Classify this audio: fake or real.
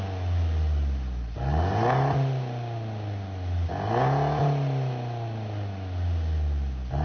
real